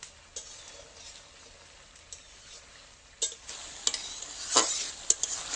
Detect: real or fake real